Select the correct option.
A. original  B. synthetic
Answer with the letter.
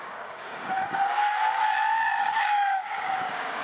B